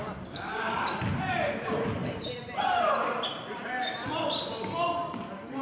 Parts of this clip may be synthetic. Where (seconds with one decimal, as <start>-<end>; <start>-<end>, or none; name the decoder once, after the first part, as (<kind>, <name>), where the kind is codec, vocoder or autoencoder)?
0.5-1.0 (codec, DAC)